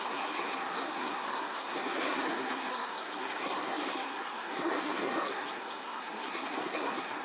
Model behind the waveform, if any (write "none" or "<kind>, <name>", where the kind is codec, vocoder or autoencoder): codec, SNAC